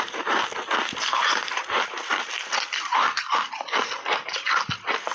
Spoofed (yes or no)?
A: no